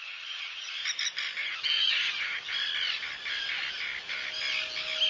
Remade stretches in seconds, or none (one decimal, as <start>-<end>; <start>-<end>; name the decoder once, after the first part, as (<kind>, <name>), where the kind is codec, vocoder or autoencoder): 0.0-0.7 (vocoder, HiFi-GAN); 1.4-2.5